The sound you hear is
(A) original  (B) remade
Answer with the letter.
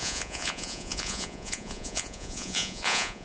B